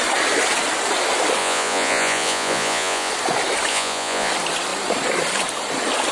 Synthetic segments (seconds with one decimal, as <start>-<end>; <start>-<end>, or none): 1.4-3.1; 3.7-4.3